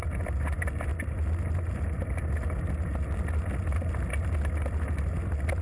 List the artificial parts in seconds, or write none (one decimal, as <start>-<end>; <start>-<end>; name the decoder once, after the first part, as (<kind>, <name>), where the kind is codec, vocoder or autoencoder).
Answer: none